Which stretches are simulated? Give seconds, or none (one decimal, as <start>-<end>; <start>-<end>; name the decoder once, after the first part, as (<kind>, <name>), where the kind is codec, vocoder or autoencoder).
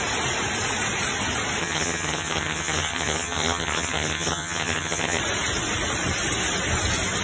1.6-5.2 (vocoder, HiFi-GAN)